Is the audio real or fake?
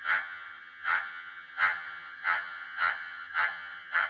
fake